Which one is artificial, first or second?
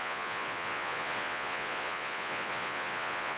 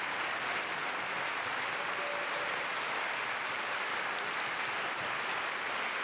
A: first